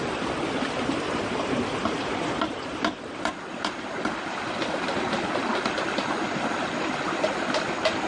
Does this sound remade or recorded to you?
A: recorded